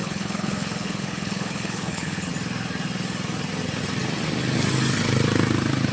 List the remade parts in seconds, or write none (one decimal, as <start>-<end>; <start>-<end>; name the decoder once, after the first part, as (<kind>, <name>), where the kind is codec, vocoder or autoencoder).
0.0-2.3 (codec, HILCodec)